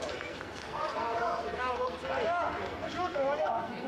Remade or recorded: remade